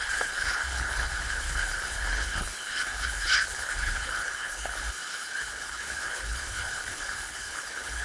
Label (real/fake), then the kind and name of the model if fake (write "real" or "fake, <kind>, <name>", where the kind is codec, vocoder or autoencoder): fake, codec, HILCodec